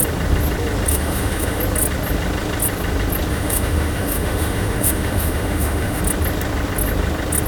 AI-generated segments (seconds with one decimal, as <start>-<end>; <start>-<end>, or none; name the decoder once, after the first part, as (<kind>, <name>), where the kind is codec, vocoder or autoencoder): 0.9-1.6 (autoencoder, DAC-VAE); 3.3-6.0